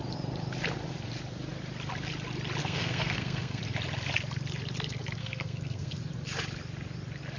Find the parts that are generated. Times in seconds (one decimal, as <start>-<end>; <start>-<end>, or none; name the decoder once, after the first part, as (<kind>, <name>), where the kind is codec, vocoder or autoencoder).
2.6-3.6 (codec, SNAC); 5.2-5.9